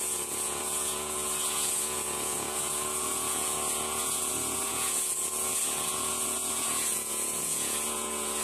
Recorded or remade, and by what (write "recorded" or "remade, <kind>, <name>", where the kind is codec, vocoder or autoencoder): remade, vocoder, Vocos